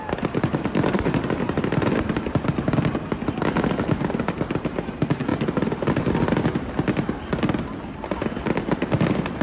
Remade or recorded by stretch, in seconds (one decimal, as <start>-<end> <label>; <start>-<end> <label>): 0.0-9.4 recorded